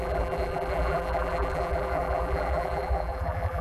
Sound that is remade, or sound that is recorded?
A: remade